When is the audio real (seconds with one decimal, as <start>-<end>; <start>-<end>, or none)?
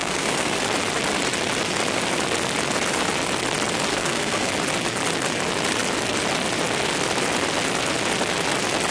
0.6-3.9; 4.5-8.9